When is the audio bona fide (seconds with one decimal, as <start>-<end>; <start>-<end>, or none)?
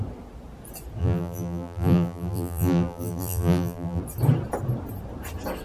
0.0-1.0; 4.0-5.6